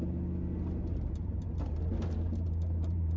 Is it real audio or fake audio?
real